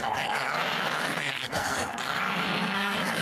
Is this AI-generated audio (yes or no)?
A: yes